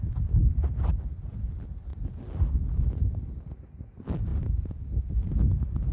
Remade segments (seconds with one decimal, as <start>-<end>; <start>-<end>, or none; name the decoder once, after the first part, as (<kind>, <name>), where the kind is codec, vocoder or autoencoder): none